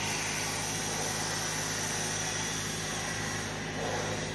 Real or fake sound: real